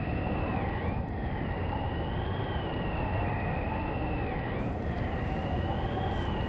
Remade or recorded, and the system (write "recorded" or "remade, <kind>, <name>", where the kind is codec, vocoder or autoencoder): recorded